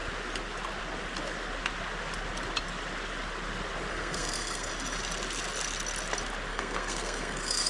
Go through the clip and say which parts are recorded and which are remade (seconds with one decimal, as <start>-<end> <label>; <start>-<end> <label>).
0.0-3.9 recorded; 3.9-4.7 remade; 4.7-6.5 recorded; 6.5-7.7 remade